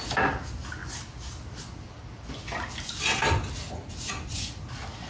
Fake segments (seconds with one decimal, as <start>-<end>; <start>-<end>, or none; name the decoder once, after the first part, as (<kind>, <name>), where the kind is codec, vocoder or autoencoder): none

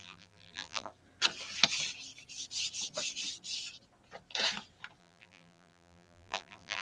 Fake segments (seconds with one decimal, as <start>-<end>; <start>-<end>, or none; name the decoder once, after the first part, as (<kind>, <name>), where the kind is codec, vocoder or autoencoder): 0.0-0.9 (vocoder, BigVGAN v2); 5.0-6.8

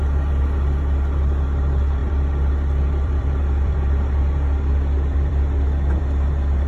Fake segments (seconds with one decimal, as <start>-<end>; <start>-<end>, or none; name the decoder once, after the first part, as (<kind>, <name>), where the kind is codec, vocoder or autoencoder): 2.0-6.0 (vocoder, BigVGAN v2)

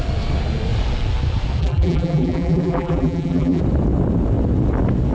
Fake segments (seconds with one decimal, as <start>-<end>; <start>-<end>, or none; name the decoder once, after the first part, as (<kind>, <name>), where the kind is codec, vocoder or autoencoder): 1.6-3.6 (vocoder, BigVGAN v2)

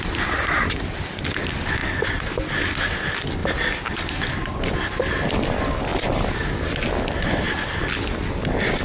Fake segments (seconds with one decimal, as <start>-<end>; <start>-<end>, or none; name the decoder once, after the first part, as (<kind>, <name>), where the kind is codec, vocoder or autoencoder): none